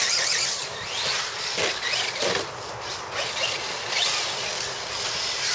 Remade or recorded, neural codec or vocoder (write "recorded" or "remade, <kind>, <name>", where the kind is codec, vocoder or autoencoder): remade, vocoder, BigVGAN v2